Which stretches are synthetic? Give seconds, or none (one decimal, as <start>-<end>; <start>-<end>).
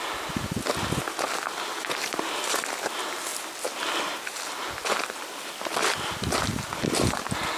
none